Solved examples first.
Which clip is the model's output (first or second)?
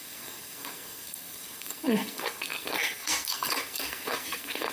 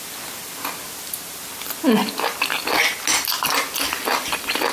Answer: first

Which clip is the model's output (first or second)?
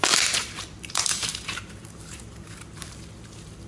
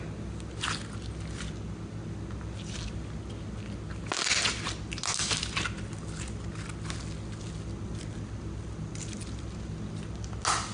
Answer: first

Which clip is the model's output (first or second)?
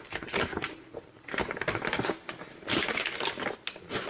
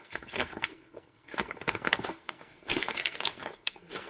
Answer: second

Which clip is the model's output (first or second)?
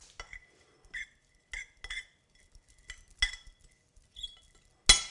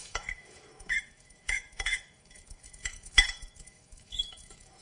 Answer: second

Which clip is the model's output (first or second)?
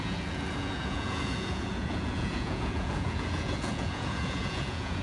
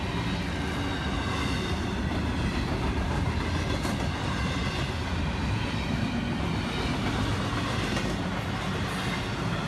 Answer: first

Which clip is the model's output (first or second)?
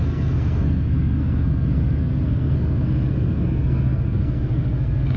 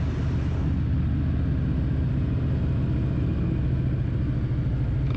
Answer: first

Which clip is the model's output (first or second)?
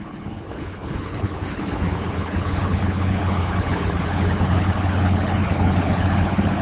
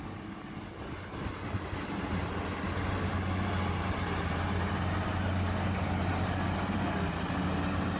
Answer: first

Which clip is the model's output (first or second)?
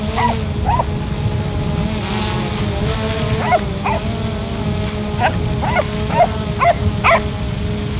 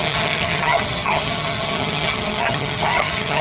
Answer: second